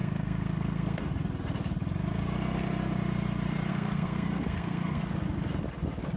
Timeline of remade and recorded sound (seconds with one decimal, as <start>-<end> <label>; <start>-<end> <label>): 0.0-1.1 remade; 1.1-3.7 recorded; 3.7-5.0 remade; 5.0-6.2 recorded